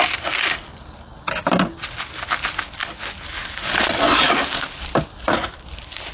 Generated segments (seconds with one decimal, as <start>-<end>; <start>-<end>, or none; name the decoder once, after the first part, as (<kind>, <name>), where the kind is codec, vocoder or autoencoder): none